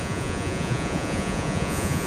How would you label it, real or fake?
fake